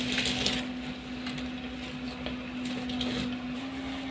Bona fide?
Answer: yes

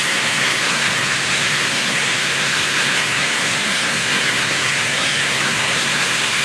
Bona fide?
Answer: no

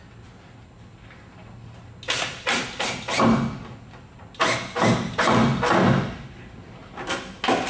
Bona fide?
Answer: yes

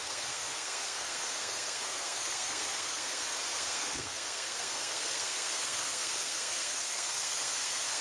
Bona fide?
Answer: no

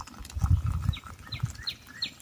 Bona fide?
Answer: yes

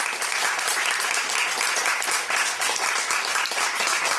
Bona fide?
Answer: yes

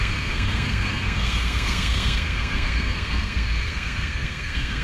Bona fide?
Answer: no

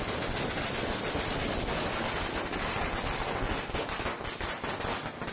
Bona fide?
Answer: yes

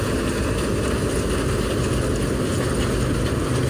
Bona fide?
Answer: yes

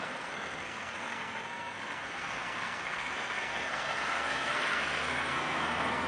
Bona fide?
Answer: no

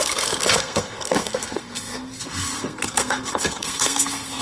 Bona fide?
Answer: no